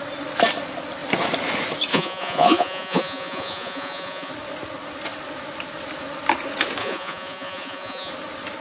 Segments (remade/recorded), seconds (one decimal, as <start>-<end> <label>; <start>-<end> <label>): 0.0-1.9 recorded; 1.9-4.3 remade; 4.3-6.8 recorded; 6.8-8.1 remade; 8.1-8.6 recorded